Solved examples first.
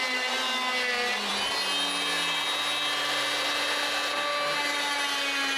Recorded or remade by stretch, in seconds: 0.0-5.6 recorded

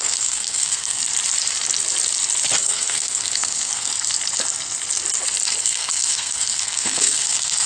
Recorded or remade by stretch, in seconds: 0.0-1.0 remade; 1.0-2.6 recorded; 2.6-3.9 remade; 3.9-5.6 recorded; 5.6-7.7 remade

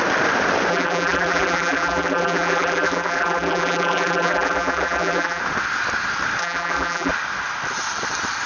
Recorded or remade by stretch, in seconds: 0.0-0.7 recorded; 0.7-5.4 remade; 5.4-6.4 recorded; 6.4-7.1 remade; 7.1-8.5 recorded

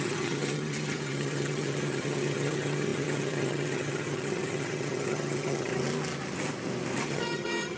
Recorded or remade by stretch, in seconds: 0.0-5.7 remade; 5.7-7.0 recorded; 7.0-7.8 remade

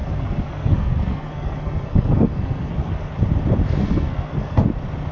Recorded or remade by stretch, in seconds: 0.0-3.1 remade; 3.1-3.8 recorded; 3.8-4.6 remade; 4.6-5.1 recorded

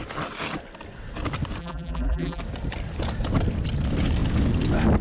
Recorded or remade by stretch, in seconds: 0.0-1.6 recorded; 1.6-2.4 remade; 2.4-5.0 recorded